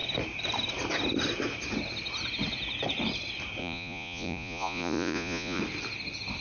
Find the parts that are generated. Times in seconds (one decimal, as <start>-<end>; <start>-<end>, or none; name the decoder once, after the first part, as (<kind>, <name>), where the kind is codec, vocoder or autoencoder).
3.6-5.6 (vocoder, Vocos)